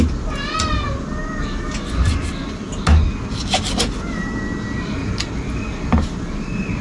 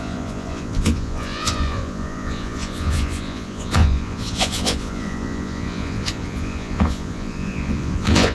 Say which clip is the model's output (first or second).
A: second